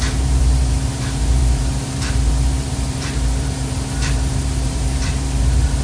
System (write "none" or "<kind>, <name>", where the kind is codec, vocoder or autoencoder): vocoder, BigVGAN v2